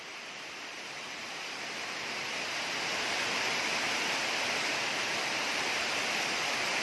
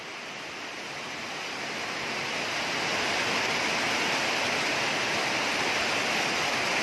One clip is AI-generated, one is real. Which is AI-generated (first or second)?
first